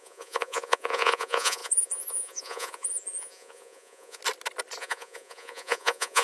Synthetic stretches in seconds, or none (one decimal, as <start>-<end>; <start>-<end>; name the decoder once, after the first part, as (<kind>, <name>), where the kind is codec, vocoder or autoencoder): 0.0-4.2 (vocoder, Vocos); 4.8-6.2